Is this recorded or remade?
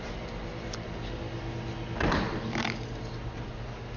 recorded